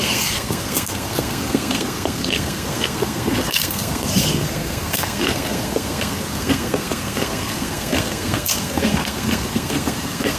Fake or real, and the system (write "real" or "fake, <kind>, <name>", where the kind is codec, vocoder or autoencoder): fake, codec, SNAC